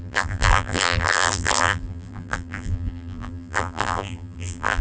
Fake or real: fake